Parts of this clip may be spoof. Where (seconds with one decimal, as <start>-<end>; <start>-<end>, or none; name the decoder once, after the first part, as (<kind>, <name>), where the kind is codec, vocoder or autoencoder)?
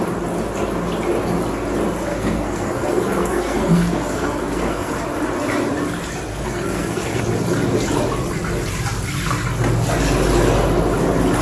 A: 2.1-5.0 (codec, SNAC); 6.3-7.2